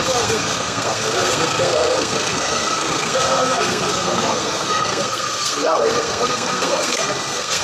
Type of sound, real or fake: fake